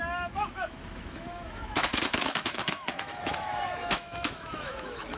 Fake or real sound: fake